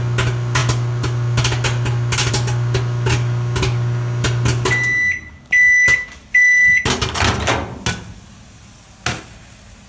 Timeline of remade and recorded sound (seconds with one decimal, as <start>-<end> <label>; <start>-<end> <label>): 0.0-9.9 recorded